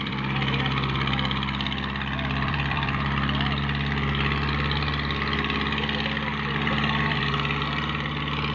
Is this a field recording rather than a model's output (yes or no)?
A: no